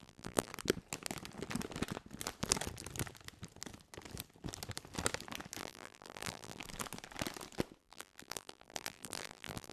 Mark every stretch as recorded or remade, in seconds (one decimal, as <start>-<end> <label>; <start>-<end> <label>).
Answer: 0.0-0.5 remade; 0.5-5.6 recorded; 5.6-6.6 remade; 6.6-7.8 recorded; 7.8-9.7 remade